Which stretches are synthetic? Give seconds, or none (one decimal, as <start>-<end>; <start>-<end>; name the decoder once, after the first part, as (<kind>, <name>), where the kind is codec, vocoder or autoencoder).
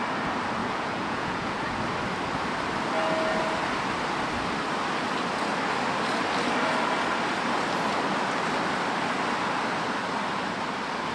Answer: 0.6-1.8 (vocoder, Vocos)